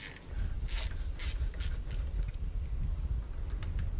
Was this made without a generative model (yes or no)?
yes